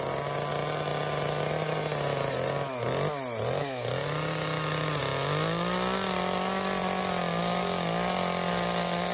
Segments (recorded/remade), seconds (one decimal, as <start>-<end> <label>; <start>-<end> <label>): 0.0-9.1 recorded